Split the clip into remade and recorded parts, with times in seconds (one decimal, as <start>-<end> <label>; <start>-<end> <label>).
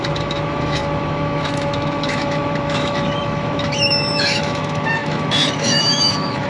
0.0-6.5 remade